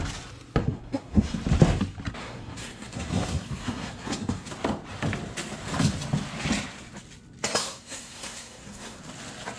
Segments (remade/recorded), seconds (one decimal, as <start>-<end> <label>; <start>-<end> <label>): 0.0-0.6 recorded; 0.6-1.4 remade; 1.4-2.2 recorded; 2.2-4.5 remade; 4.5-7.6 recorded; 7.6-9.0 remade; 9.0-9.6 recorded